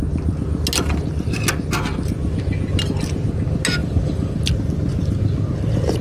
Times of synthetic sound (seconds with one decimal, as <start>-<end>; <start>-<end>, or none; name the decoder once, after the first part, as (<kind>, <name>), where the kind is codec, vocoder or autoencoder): 3.8-4.4 (vocoder, BigVGAN v2)